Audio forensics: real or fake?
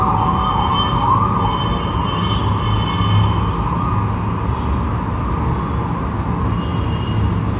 real